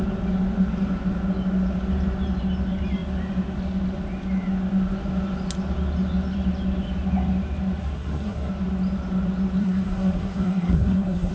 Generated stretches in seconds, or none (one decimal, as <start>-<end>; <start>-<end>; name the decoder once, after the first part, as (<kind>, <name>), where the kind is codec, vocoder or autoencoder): 7.8-8.5 (codec, SNAC); 9.6-11.3